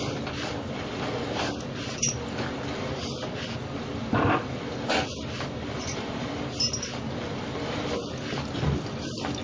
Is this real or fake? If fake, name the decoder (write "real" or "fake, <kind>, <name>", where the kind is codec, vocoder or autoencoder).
real